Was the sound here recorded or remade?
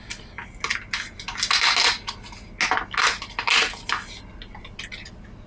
recorded